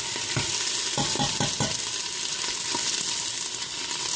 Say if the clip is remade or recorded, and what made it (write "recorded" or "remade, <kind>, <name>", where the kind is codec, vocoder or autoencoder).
recorded